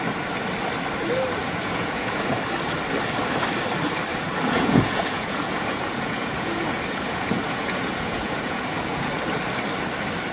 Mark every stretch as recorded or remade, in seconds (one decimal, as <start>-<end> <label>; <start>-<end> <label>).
0.0-1.4 recorded; 1.4-2.4 remade; 2.4-4.1 recorded; 4.1-9.1 remade; 9.1-10.3 recorded